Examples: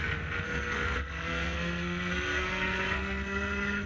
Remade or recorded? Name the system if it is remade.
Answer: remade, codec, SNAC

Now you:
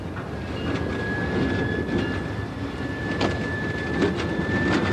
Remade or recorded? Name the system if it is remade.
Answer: recorded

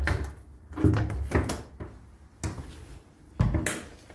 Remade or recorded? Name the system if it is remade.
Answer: recorded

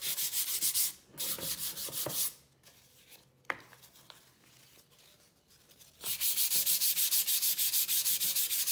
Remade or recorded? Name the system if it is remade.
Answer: recorded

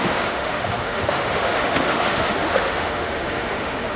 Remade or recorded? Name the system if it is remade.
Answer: remade, autoencoder, DAC-VAE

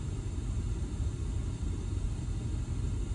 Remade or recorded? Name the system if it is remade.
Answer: recorded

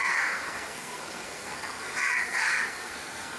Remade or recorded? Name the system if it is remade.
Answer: remade, codec, SNAC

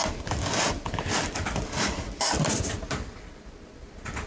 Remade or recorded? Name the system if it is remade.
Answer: recorded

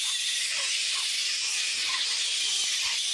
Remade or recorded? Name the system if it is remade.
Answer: recorded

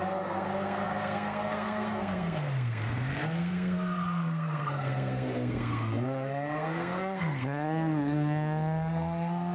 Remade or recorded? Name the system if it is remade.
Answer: remade, codec, SNAC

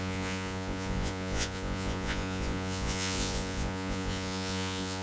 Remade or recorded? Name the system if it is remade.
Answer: remade, vocoder, Vocos